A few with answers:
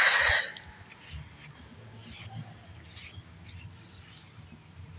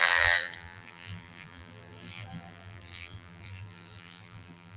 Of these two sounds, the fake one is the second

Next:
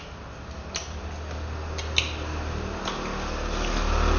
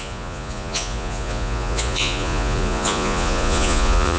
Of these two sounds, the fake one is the second